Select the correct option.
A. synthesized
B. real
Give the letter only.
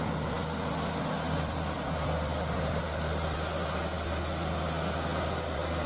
B